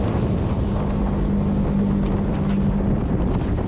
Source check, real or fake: real